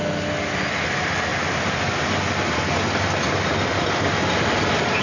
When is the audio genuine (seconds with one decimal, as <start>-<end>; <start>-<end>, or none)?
0.0-5.0